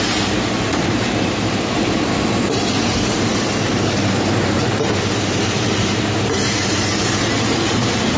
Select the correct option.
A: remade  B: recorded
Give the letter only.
A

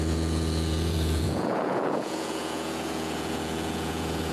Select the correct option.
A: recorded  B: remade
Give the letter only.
B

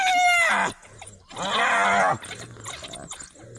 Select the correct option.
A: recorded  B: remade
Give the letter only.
A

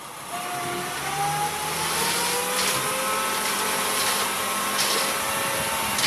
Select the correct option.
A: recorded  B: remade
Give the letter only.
A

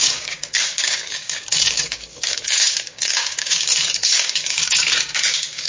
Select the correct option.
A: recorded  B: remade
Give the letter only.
B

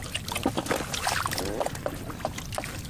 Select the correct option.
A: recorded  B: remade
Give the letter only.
A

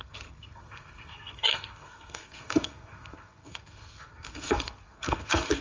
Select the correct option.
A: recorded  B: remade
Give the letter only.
B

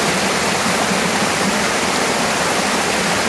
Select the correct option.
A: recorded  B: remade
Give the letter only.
A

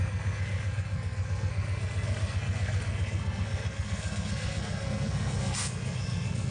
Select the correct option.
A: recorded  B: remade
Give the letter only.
B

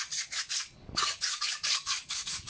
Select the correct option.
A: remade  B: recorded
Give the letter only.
A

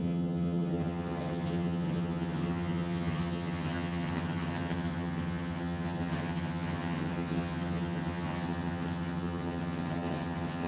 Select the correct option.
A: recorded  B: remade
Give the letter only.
B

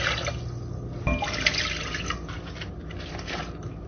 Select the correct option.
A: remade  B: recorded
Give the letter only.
B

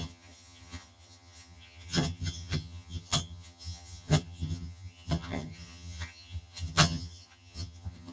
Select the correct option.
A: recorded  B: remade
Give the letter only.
B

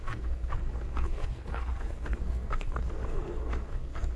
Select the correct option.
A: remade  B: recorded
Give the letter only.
A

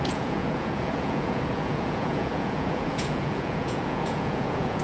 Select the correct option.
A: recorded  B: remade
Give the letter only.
B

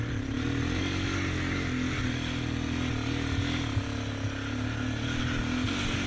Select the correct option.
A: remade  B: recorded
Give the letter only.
B